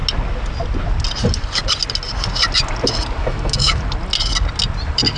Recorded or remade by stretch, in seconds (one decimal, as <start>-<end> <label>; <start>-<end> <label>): 0.0-3.2 recorded; 3.2-3.8 remade; 3.8-5.2 recorded